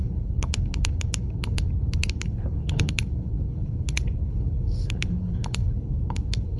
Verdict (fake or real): fake